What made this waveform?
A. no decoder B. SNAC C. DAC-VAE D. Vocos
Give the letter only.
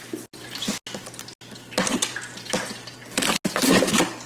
A